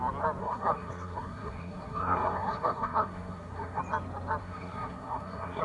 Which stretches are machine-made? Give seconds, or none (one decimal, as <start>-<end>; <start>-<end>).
0.4-3.8; 4.4-5.6